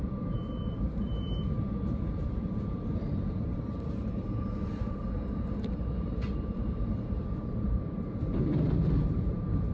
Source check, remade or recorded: remade